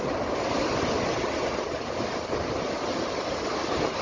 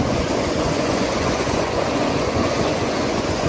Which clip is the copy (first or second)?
second